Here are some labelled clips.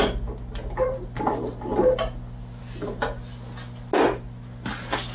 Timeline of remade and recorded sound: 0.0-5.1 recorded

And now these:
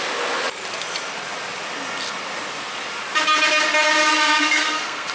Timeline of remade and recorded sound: 0.0-4.1 recorded; 4.1-5.1 remade

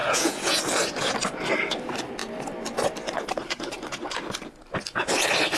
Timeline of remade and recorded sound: 0.0-0.6 remade; 0.6-5.6 recorded

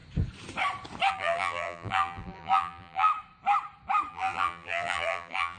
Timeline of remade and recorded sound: 0.0-1.1 recorded; 1.1-3.1 remade; 3.1-4.1 recorded; 4.1-5.6 remade

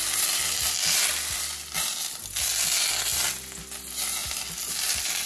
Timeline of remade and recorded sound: 0.0-5.3 recorded

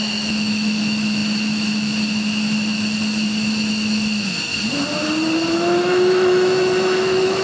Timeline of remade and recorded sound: 0.0-4.5 remade; 4.5-5.8 recorded; 5.8-7.4 remade